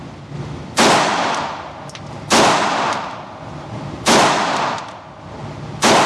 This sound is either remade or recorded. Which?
recorded